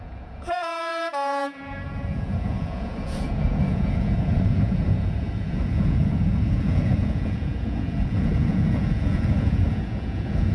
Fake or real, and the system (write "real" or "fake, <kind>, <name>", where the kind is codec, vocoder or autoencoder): fake, vocoder, Vocos